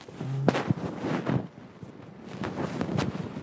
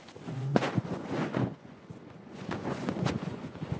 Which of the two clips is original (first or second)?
first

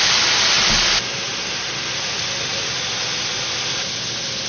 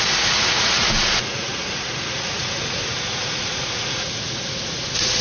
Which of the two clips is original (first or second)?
first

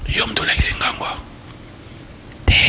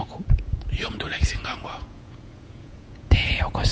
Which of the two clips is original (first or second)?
first